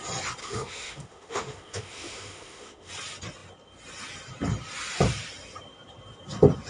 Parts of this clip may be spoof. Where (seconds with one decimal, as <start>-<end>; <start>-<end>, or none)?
0.4-2.9